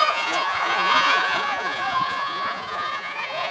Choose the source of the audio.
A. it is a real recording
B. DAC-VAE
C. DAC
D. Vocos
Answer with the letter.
D